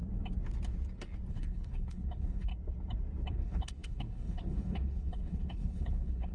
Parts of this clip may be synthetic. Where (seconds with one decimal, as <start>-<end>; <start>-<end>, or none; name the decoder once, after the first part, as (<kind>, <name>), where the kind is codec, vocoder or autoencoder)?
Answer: 1.3-2.5 (codec, HILCodec); 3.3-6.3